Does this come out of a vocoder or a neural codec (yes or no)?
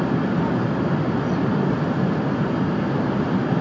no